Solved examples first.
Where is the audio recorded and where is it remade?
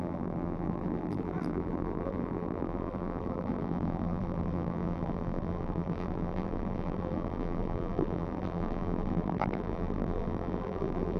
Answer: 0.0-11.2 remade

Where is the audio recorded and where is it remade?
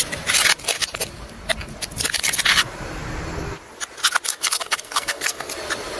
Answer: 0.0-4.3 recorded; 4.3-5.5 remade; 5.5-6.0 recorded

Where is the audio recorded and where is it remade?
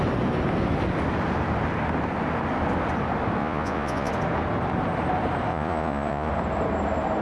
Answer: 0.0-3.4 recorded; 3.4-4.1 remade; 4.1-5.5 recorded; 5.5-6.3 remade; 6.3-7.2 recorded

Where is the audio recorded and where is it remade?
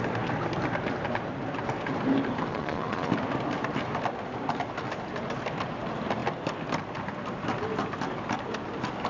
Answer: 0.0-2.5 recorded; 2.5-3.1 remade; 3.1-9.1 recorded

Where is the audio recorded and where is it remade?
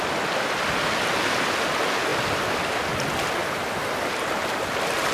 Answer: 0.0-5.1 recorded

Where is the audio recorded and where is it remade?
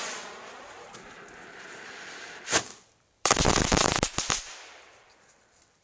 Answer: 0.0-3.9 remade; 3.9-5.0 recorded; 5.0-5.8 remade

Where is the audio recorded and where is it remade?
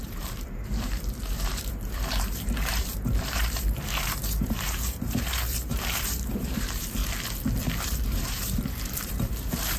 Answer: 0.0-7.0 remade; 7.0-7.8 recorded; 7.8-9.8 remade